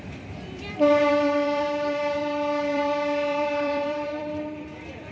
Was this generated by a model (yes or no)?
yes